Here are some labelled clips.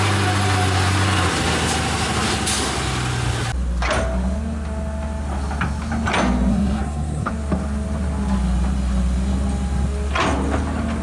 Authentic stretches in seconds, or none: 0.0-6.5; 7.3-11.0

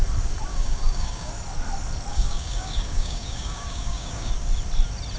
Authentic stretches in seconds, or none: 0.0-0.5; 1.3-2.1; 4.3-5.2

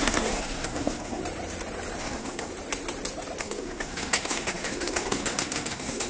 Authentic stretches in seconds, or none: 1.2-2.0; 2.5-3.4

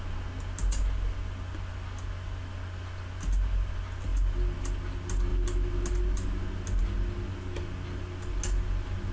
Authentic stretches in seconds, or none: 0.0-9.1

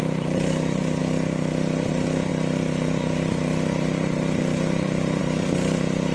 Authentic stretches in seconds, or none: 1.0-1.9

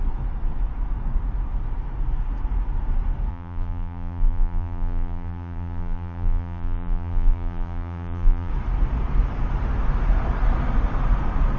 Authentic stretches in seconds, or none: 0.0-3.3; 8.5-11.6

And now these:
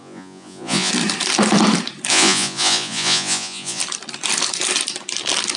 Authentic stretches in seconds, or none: 0.9-2.1; 3.8-5.6

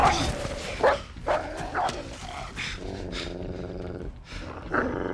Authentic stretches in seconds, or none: 0.0-5.1